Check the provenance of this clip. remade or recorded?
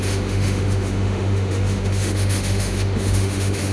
remade